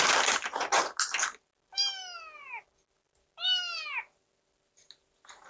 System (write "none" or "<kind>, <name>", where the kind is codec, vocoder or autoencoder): none